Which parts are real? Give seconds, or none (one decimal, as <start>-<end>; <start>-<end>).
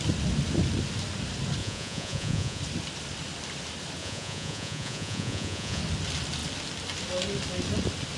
0.0-1.6; 2.6-4.0; 5.8-8.2